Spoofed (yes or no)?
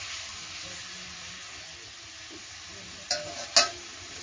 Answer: no